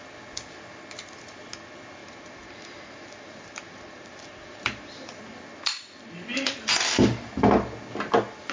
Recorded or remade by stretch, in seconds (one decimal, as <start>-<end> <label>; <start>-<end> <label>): 0.0-2.0 recorded; 2.0-5.2 remade; 5.2-6.3 recorded; 6.3-6.8 remade; 6.8-8.5 recorded